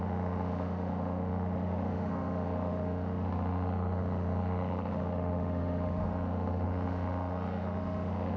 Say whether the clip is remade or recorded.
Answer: remade